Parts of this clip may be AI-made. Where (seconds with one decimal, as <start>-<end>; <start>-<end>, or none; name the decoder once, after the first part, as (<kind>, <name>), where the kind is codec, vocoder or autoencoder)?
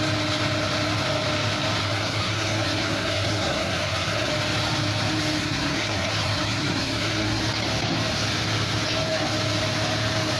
1.8-4.3 (codec, SNAC); 5.4-7.4